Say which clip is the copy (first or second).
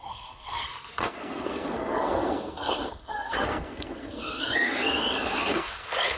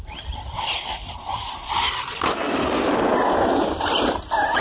first